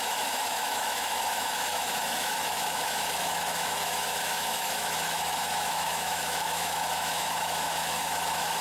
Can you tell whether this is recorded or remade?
remade